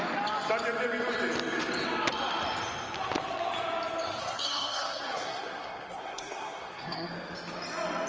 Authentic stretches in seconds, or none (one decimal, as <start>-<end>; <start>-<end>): 0.0-4.2; 7.1-8.1

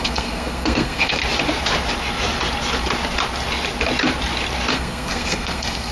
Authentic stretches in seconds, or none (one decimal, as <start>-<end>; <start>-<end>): 1.2-4.7

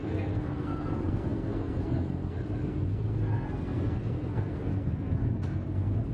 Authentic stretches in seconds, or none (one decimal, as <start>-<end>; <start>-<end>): none

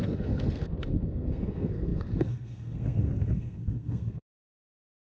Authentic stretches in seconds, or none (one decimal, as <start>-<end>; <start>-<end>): none

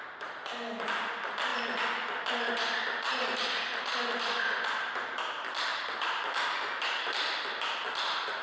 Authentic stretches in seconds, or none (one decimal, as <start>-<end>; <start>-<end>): 0.0-8.4

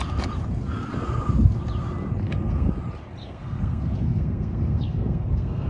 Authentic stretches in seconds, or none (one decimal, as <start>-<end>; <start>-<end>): 0.0-2.2; 2.7-3.2

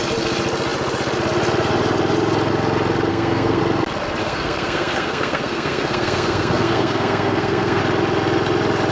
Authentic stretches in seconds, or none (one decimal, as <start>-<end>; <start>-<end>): 0.0-3.1; 3.6-4.2; 7.8-8.9

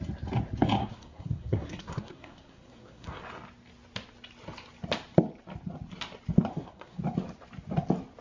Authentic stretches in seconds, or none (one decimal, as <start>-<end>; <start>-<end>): 0.0-0.8; 3.2-6.5; 7.0-8.2